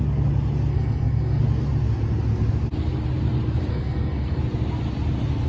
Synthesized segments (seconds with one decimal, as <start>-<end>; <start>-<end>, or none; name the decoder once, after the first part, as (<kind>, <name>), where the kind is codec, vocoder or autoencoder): 0.7-1.4 (codec, SNAC); 3.7-4.4

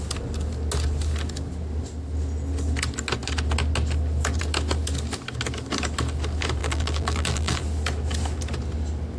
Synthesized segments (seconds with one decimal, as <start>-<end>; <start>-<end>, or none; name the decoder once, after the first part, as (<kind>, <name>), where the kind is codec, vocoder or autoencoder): 6.6-7.6 (vocoder, BigVGAN v2)